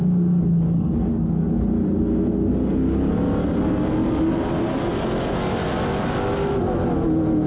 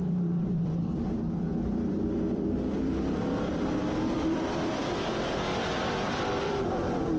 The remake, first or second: second